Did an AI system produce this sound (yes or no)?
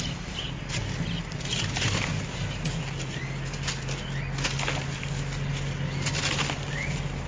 no